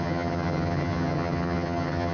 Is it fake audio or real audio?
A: fake